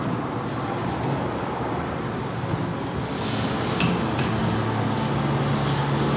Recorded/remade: recorded